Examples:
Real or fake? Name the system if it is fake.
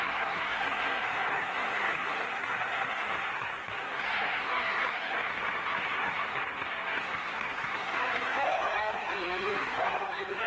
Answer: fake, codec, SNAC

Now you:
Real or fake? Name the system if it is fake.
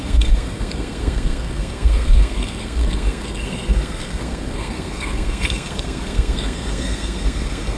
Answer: fake, codec, SNAC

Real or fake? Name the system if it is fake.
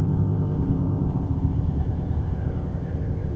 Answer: fake, codec, ZipCodec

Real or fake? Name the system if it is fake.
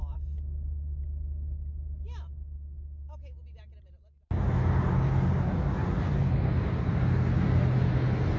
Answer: real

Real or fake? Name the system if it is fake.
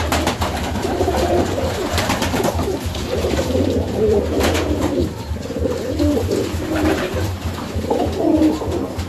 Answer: fake, vocoder, BigVGAN v2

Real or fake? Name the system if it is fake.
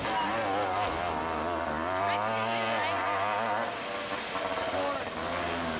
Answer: real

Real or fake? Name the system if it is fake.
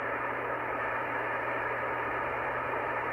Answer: fake, vocoder, BigVGAN v2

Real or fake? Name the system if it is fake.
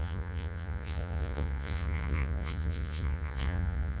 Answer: fake, vocoder, Vocos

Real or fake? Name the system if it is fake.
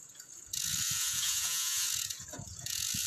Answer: fake, vocoder, Vocos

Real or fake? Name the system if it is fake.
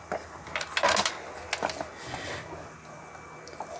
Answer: real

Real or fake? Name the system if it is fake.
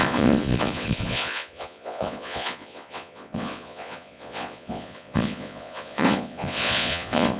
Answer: fake, vocoder, Vocos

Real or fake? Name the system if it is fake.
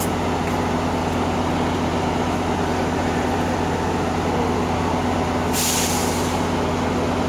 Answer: real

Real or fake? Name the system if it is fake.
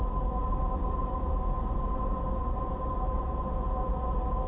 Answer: real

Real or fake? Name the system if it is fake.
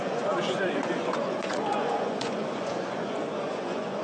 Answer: fake, vocoder, Vocos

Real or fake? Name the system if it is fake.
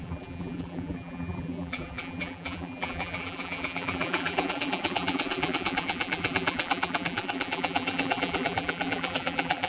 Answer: fake, vocoder, BigVGAN v2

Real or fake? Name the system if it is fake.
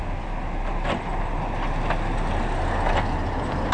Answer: real